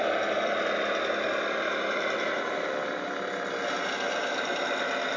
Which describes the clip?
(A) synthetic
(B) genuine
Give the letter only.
B